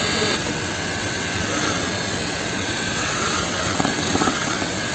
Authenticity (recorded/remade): remade